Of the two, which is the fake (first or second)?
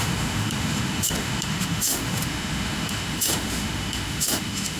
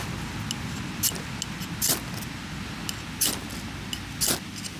first